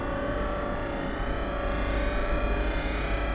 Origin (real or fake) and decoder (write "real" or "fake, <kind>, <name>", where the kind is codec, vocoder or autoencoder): real